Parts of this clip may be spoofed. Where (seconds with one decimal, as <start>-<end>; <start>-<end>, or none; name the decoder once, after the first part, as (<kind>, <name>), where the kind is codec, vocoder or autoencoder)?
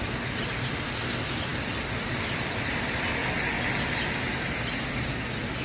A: 0.0-3.2 (vocoder, BigVGAN v2)